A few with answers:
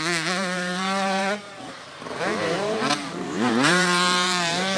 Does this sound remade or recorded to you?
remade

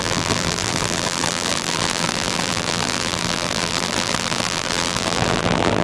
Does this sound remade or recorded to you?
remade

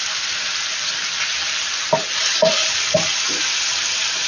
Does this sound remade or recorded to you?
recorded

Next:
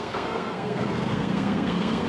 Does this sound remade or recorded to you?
remade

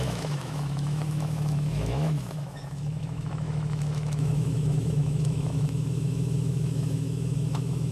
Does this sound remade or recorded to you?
remade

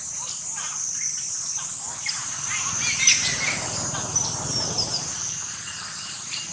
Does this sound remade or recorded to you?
recorded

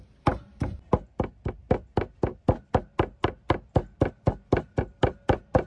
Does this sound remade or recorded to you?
recorded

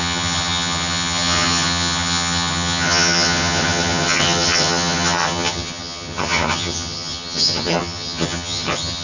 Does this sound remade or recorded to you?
remade